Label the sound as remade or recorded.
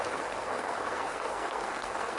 remade